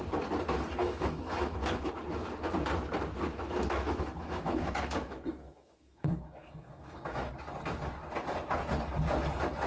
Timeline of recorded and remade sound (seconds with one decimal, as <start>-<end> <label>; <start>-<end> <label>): 0.0-0.8 recorded; 0.8-1.9 remade; 1.9-3.3 recorded; 3.3-7.3 remade; 7.3-9.7 recorded